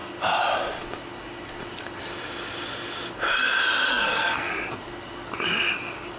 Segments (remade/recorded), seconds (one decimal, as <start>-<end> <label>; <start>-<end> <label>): 0.0-3.9 recorded; 3.9-4.5 remade; 4.5-6.2 recorded